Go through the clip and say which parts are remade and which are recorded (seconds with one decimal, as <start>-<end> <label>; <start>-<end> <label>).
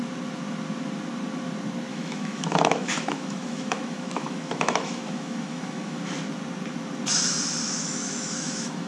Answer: 0.0-1.9 recorded; 1.9-6.1 remade; 6.1-7.6 recorded; 7.6-8.9 remade